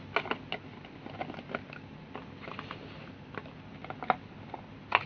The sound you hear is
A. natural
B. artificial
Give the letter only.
A